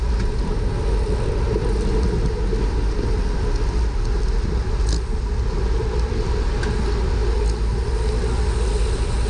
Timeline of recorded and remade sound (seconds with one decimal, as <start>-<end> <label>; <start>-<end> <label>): 0.0-9.3 recorded